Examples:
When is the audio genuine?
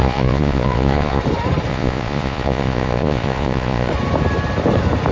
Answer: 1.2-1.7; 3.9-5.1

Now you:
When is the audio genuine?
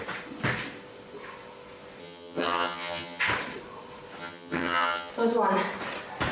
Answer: 0.0-2.0; 3.2-4.2; 5.1-6.3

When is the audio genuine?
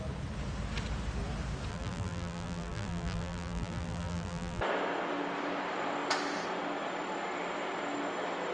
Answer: 0.0-1.7; 4.6-8.5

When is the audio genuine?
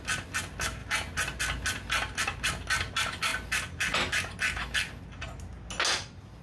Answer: 0.0-0.8; 1.4-6.4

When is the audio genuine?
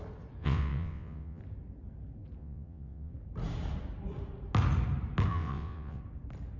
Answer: 0.0-0.4; 1.4-2.4; 3.1-5.3; 6.0-6.6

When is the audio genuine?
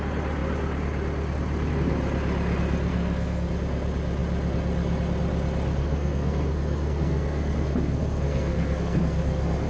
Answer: 0.0-2.9; 3.5-5.8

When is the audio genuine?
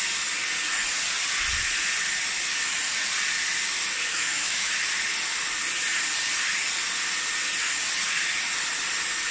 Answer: 0.0-4.1; 4.7-9.3